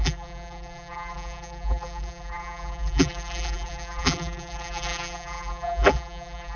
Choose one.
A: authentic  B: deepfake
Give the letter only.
B